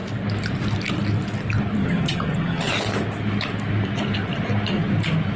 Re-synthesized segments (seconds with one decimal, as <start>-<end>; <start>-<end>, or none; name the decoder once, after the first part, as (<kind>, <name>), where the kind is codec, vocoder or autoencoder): 1.8-2.7 (vocoder, HiFi-GAN)